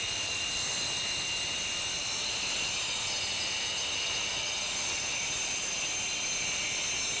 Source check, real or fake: real